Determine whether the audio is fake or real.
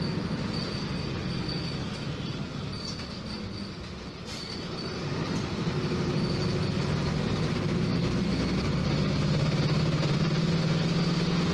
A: real